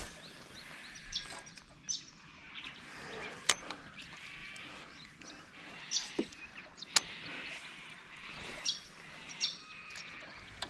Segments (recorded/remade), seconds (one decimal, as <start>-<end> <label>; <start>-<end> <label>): 0.0-2.9 recorded; 2.9-3.9 remade; 3.9-10.7 recorded